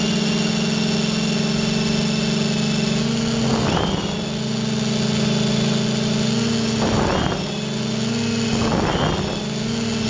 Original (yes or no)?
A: yes